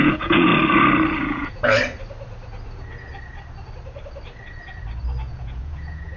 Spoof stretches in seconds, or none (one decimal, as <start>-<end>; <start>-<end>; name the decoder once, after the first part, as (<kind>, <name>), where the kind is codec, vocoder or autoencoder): 0.0-0.5 (vocoder, Vocos); 1.2-1.6; 5.3-6.2